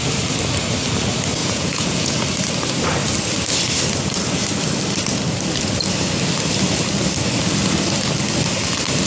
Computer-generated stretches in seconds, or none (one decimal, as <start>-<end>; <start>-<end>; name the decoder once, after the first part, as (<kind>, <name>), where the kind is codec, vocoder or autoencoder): 1.4-2.1 (vocoder, Vocos)